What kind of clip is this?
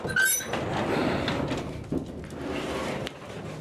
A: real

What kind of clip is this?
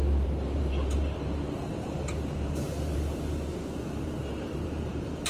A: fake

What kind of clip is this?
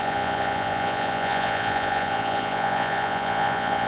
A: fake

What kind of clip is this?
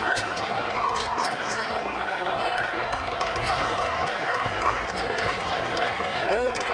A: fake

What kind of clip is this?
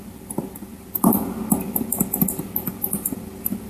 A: real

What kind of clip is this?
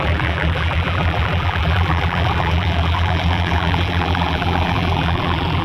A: fake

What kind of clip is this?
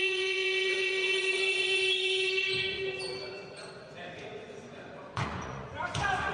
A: fake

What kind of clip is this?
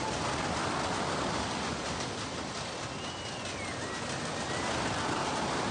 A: real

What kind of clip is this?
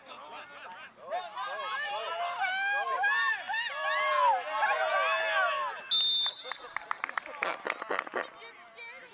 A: real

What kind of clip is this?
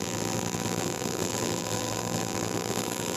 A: fake